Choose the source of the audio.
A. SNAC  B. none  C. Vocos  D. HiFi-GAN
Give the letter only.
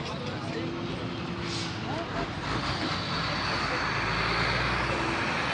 B